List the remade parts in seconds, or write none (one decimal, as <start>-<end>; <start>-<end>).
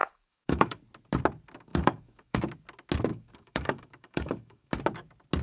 0.0-0.8; 1.7-2.4; 3.1-4.7